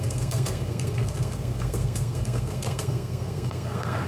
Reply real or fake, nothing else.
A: fake